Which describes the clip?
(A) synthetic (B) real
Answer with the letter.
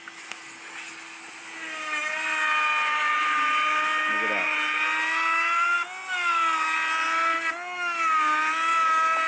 B